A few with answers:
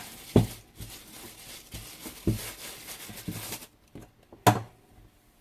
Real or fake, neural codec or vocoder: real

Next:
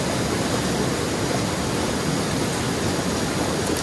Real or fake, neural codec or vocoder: real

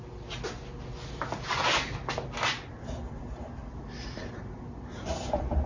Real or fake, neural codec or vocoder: real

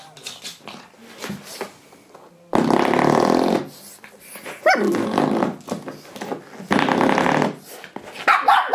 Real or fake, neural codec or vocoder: real